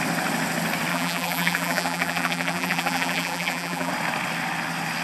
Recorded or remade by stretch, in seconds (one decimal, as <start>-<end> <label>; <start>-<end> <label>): 0.0-0.9 recorded; 0.9-3.9 remade; 3.9-5.0 recorded